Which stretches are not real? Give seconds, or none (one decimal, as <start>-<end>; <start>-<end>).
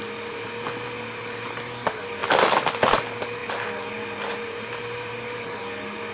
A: 4.3-5.6